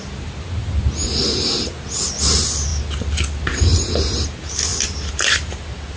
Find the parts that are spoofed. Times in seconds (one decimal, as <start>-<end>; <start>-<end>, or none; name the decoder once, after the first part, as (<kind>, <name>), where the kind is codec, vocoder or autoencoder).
none